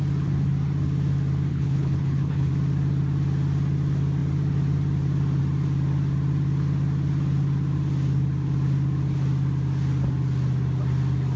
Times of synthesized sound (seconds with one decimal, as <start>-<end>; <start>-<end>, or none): 1.5-2.5